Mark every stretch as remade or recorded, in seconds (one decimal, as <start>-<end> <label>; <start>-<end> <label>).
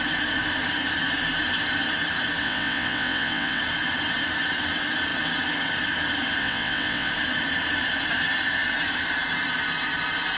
0.0-2.4 recorded; 2.4-3.6 remade; 3.6-6.4 recorded; 6.4-7.1 remade; 7.1-10.4 recorded